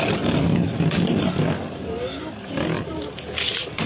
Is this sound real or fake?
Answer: real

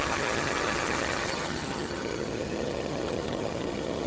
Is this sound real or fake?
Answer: fake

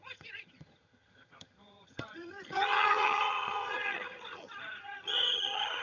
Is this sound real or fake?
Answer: fake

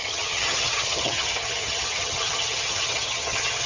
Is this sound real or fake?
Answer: fake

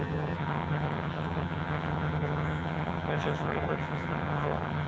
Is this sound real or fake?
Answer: fake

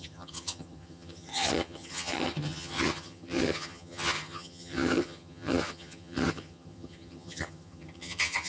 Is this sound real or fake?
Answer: fake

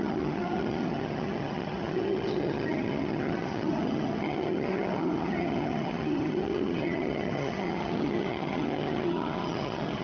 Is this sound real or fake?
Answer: fake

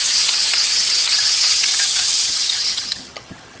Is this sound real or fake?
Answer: fake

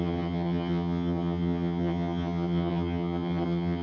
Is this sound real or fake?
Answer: fake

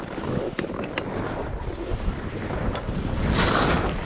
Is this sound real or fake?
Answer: real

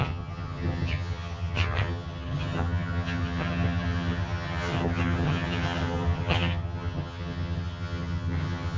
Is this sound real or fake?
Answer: fake